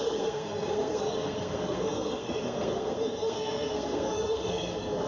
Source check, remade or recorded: remade